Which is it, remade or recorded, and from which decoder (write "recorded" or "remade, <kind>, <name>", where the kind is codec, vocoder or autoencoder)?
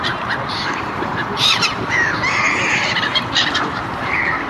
remade, vocoder, BigVGAN v2